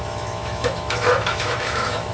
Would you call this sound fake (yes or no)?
yes